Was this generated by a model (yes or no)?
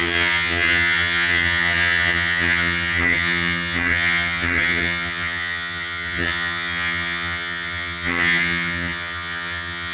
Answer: yes